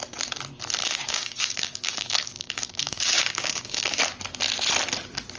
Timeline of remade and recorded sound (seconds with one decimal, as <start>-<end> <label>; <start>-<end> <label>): 0.0-0.8 recorded; 0.8-4.0 remade; 4.0-5.4 recorded